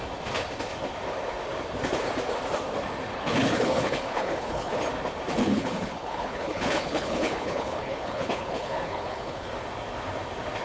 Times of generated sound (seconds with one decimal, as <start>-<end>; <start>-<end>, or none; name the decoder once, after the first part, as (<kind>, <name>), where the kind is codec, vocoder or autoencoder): 3.1-4.8 (codec, HILCodec); 5.4-9.5